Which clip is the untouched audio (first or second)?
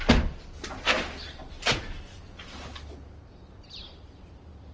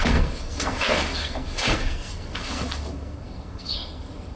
first